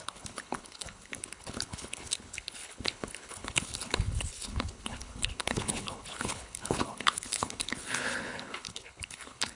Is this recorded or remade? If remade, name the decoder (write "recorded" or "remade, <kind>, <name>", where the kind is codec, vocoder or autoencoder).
remade, codec, HILCodec